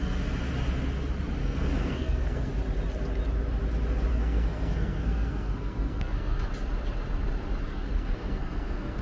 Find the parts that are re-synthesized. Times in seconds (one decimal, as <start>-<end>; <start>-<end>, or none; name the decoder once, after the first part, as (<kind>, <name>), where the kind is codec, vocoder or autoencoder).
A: 1.4-2.5 (codec, SNAC); 4.1-6.5; 7.7-9.0